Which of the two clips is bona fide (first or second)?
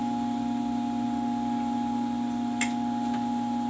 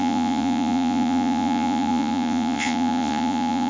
first